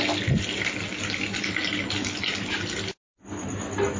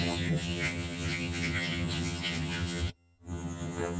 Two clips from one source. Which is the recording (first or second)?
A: first